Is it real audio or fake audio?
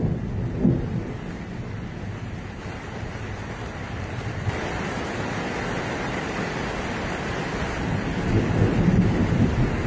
real